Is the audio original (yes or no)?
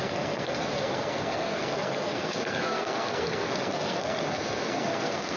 no